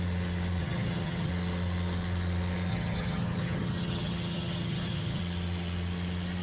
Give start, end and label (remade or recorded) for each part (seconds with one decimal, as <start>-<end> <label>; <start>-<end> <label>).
0.0-0.6 recorded; 0.6-1.3 remade; 1.3-2.7 recorded; 2.7-5.2 remade; 5.2-6.4 recorded